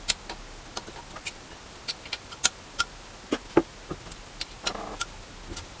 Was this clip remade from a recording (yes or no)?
no